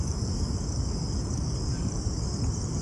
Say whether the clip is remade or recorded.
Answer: remade